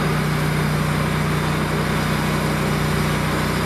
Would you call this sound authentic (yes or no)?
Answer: yes